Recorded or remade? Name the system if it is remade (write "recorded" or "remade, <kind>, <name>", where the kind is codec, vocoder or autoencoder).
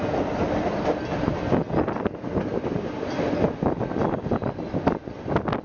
recorded